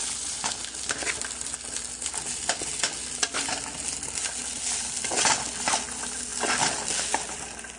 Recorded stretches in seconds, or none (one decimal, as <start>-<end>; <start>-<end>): 0.0-7.8